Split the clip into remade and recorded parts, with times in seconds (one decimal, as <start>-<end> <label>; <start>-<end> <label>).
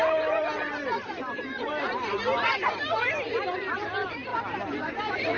0.0-4.3 remade; 4.3-5.4 recorded